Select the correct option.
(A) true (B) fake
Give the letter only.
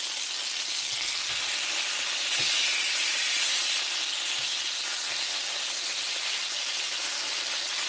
A